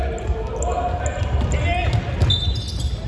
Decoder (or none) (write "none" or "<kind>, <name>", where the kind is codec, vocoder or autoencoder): none